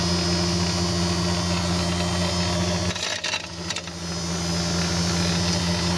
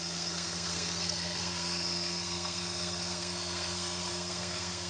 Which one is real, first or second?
first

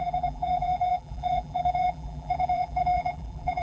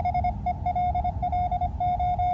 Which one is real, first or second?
second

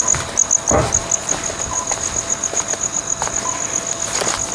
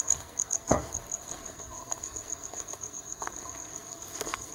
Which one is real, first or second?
first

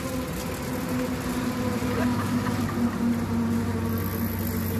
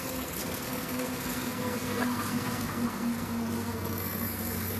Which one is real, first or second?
first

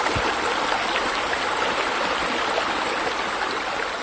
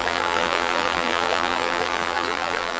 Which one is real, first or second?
first